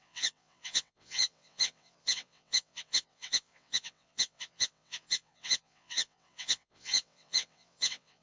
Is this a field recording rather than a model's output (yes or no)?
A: no